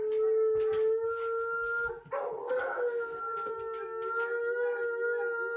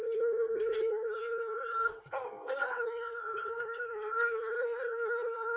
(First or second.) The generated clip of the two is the second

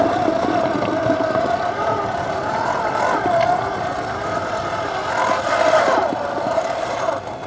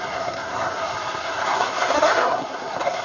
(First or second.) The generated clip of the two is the second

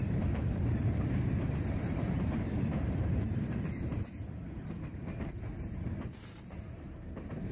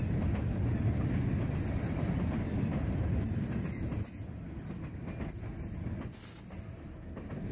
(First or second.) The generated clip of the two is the first